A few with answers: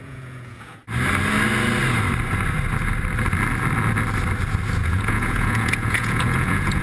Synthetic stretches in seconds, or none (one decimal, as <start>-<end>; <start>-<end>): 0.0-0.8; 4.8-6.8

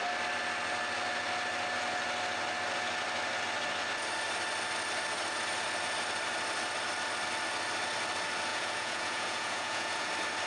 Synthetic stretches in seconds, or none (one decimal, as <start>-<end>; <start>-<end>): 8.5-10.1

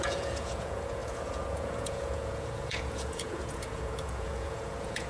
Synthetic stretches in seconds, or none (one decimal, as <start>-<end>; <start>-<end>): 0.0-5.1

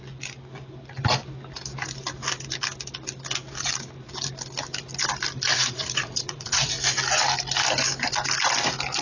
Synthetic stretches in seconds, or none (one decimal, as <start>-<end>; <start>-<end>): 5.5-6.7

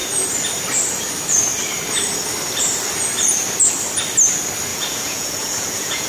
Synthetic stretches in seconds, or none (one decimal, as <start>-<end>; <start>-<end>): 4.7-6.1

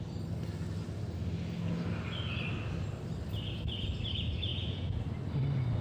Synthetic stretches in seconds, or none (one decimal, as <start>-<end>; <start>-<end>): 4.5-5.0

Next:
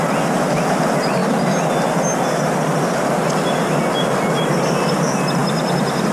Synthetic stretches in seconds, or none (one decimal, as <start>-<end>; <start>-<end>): none